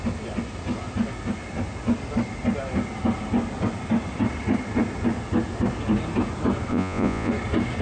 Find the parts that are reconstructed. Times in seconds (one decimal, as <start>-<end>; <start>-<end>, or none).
6.7-7.3